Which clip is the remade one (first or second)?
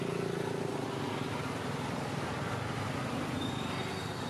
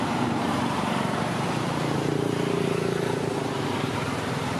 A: second